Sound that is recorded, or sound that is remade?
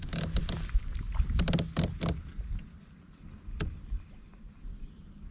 recorded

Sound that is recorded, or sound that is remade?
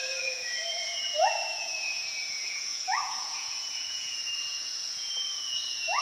remade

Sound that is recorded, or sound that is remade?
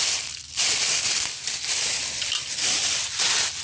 recorded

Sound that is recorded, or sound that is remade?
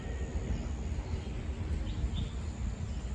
recorded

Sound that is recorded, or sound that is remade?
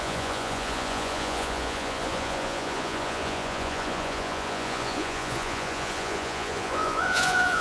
remade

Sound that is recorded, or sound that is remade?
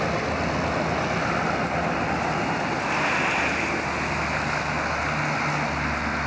recorded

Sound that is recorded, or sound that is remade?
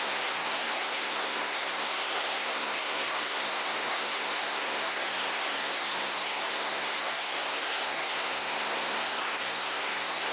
remade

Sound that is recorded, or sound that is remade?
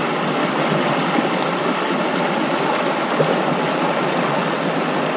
recorded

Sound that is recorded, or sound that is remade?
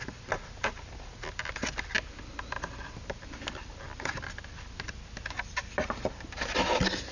recorded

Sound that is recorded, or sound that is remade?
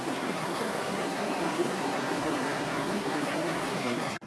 remade